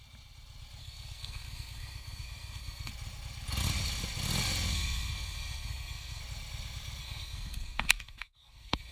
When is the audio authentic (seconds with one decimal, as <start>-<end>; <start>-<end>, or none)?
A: 0.0-0.8; 2.9-4.7; 6.2-7.0